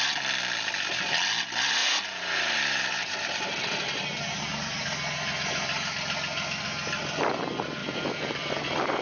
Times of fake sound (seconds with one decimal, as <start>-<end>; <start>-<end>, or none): 1.8-4.2; 7.8-9.0